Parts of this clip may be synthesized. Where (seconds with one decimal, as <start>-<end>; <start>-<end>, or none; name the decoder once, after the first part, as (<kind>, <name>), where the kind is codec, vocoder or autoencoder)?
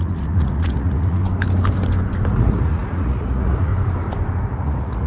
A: 0.0-1.2 (vocoder, Vocos); 2.3-3.7; 4.5-5.1